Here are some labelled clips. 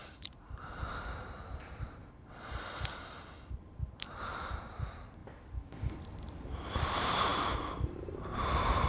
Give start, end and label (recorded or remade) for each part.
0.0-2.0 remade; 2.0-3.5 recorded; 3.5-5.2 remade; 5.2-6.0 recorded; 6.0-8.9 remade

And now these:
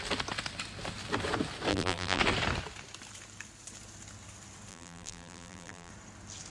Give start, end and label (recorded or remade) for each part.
0.0-1.7 recorded; 1.7-2.2 remade; 2.2-4.7 recorded; 4.7-5.9 remade; 5.9-6.5 recorded

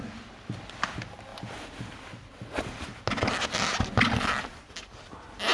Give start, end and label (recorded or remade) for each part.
0.0-5.5 recorded

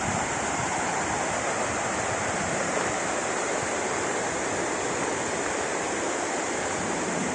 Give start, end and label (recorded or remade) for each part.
0.0-5.7 recorded; 5.7-7.3 remade

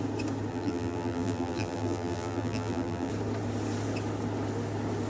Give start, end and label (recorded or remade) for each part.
0.0-0.5 recorded; 0.5-3.1 remade; 3.1-5.1 recorded

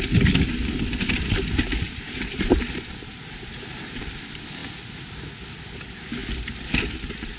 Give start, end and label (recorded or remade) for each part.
0.0-1.7 recorded; 1.7-4.1 remade; 4.1-7.4 recorded